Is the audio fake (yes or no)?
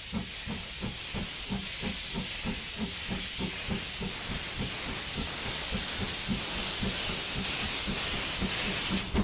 no